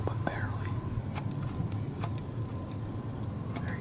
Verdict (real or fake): real